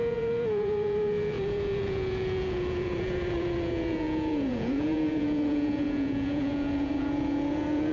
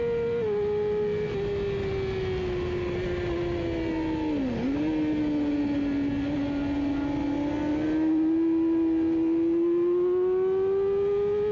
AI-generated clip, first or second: first